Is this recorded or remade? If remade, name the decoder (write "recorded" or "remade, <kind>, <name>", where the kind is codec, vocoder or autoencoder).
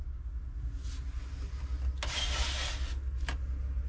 recorded